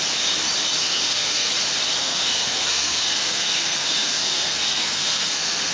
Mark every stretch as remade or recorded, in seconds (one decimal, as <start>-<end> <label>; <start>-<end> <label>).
0.0-0.8 recorded; 0.8-1.5 remade; 1.5-2.0 recorded; 2.0-5.7 remade